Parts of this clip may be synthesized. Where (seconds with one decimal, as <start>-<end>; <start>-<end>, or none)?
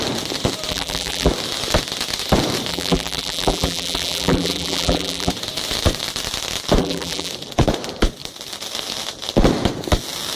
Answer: 0.7-1.3; 2.7-5.3; 6.8-7.3